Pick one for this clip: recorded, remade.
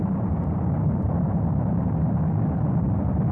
recorded